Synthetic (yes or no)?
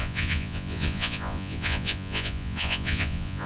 yes